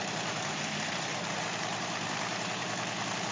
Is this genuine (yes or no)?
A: no